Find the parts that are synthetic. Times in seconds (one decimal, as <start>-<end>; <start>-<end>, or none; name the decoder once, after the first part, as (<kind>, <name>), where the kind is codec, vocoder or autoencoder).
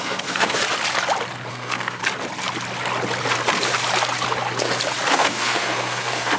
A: 0.0-0.6 (codec, SNAC); 1.5-2.0; 5.1-6.4